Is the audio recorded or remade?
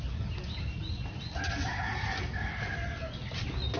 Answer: recorded